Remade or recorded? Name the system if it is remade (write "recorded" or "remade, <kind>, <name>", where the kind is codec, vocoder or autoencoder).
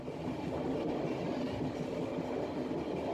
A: recorded